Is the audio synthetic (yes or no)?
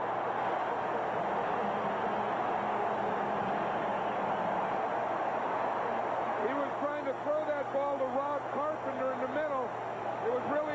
no